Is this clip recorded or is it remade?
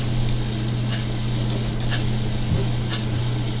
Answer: recorded